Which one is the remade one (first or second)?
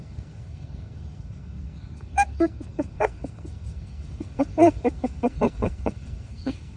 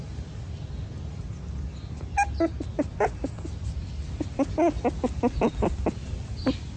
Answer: first